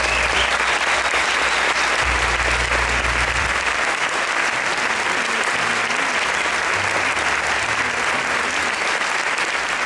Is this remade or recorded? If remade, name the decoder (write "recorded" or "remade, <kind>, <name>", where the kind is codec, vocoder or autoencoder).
recorded